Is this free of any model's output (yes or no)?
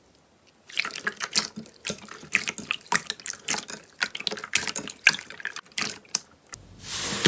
yes